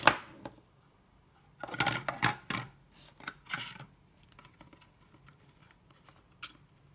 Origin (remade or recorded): recorded